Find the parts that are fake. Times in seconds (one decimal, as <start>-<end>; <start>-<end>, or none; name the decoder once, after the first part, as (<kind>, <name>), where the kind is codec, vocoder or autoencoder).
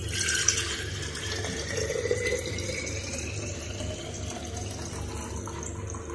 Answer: 0.0-3.7 (vocoder, BigVGAN v2)